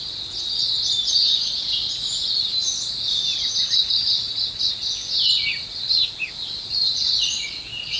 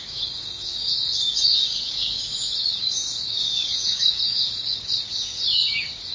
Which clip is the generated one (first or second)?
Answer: second